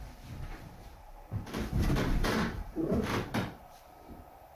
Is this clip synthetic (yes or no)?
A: yes